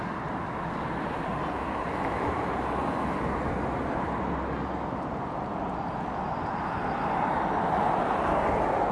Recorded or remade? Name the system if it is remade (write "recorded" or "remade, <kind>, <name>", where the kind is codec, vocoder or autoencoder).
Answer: recorded